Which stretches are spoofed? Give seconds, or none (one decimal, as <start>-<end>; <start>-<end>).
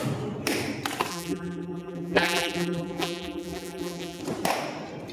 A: 1.1-4.2